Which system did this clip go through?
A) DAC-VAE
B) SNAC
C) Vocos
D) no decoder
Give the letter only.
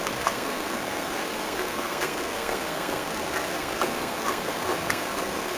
B